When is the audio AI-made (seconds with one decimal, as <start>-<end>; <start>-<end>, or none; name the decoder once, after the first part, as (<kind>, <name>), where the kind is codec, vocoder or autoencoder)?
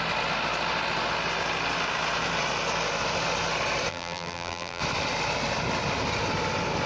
3.9-4.8 (vocoder, BigVGAN v2)